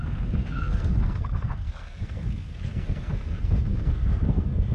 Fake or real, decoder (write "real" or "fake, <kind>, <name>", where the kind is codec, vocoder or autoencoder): fake, codec, SNAC